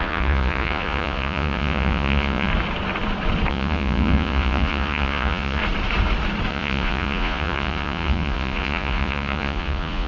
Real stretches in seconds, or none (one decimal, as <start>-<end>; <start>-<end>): 2.5-3.5; 5.6-6.5